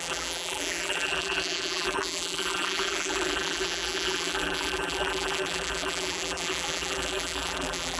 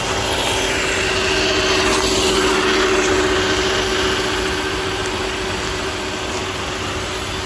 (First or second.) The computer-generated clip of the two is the first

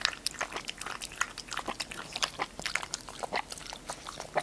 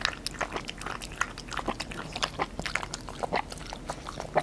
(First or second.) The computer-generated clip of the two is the first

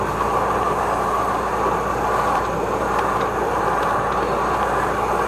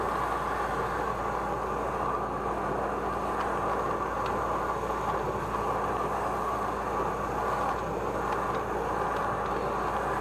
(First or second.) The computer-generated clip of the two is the first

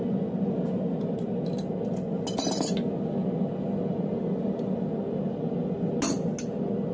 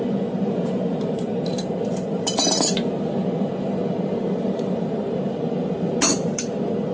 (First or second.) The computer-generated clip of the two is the second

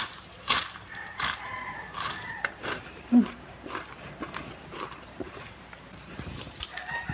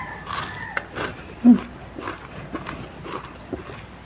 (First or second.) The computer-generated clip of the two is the first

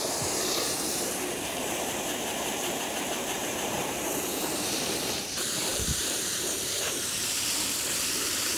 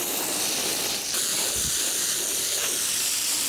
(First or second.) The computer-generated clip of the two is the first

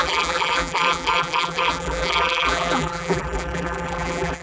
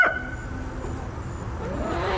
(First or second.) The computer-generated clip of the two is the first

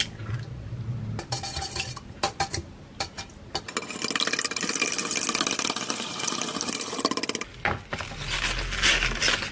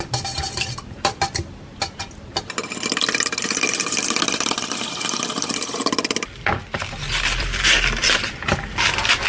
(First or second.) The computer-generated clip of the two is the second